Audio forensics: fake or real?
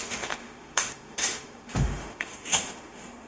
fake